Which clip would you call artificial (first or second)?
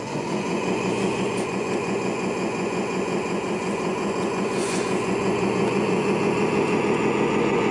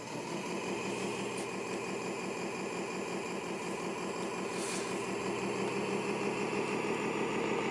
first